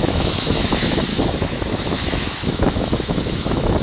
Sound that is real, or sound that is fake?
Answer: fake